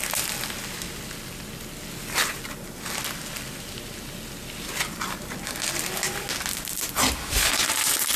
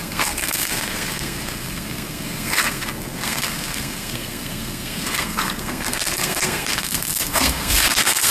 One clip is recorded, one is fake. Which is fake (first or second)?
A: second